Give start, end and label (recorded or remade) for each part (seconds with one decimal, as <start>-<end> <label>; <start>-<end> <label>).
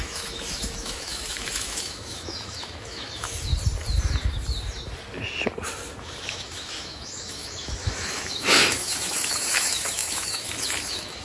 0.0-3.5 remade; 3.5-6.0 recorded; 6.0-11.2 remade